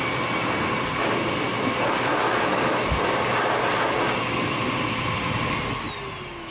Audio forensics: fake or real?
real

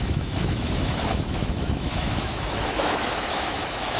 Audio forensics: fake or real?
fake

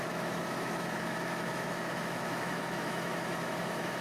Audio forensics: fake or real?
fake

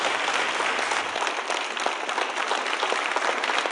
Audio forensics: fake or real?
real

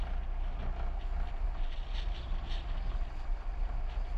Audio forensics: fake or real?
real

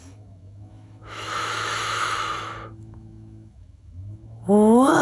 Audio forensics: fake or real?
fake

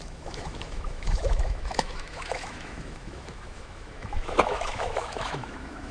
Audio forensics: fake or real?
fake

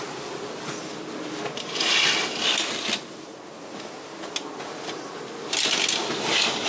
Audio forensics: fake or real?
real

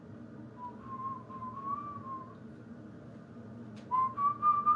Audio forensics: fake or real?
real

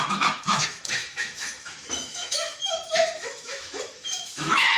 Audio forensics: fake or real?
fake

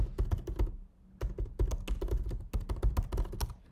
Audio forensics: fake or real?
real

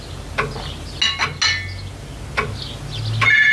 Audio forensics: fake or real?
real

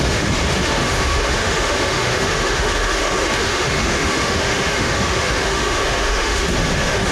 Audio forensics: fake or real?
fake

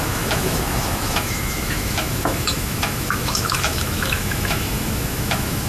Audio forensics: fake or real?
fake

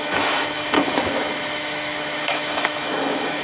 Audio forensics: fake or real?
fake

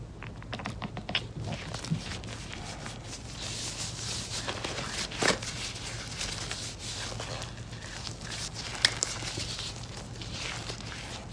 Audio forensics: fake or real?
real